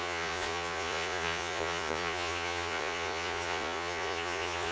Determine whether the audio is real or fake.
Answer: fake